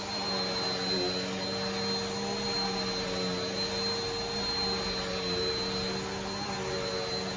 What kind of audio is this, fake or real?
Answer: real